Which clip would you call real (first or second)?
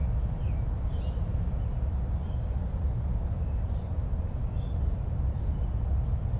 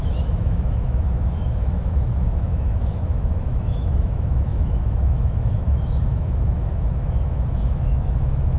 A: first